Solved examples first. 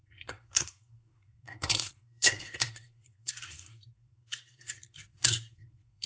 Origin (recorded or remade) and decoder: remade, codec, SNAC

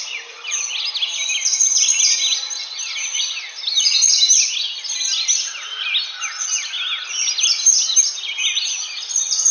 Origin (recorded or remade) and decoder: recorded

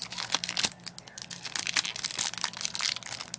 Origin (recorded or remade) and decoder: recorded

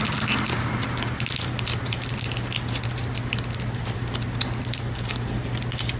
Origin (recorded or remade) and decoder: recorded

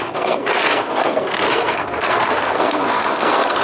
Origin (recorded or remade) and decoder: remade, codec, SNAC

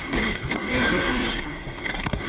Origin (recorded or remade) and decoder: remade, codec, SNAC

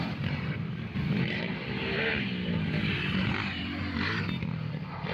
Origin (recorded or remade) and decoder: recorded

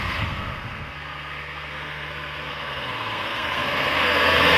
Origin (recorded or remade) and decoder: remade, codec, SNAC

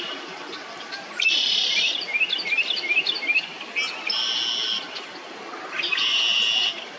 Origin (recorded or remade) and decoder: recorded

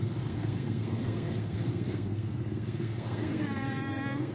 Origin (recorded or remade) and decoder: remade, codec, SNAC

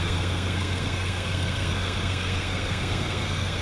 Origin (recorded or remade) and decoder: remade, codec, SNAC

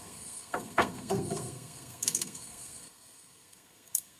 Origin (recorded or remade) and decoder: remade, codec, SNAC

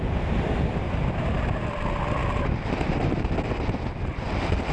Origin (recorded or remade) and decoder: recorded